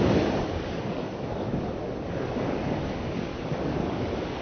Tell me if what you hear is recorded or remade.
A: remade